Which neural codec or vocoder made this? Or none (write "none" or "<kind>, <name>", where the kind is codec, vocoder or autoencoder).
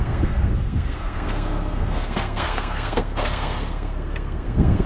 codec, SNAC